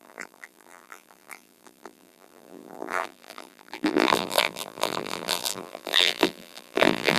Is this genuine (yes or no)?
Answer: no